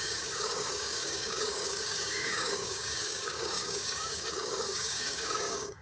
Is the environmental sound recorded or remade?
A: remade